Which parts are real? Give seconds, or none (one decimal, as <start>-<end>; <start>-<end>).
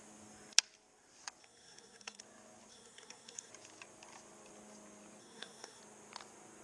0.0-1.4; 2.2-2.7; 3.5-5.2; 5.8-6.6